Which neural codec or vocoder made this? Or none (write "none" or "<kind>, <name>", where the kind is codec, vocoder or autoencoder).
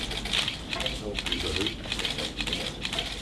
none